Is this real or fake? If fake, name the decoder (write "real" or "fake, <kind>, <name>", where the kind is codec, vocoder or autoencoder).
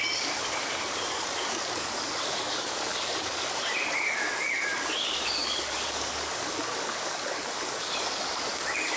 fake, codec, DAC